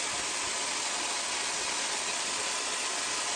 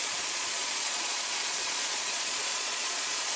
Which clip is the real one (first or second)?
first